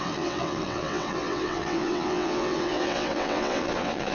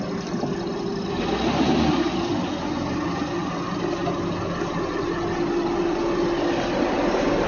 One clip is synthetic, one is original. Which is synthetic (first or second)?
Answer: first